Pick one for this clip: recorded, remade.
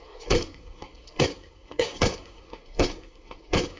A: remade